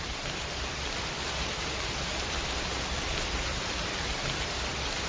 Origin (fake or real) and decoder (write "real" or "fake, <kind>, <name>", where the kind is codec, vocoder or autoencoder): fake, vocoder, BigVGAN v2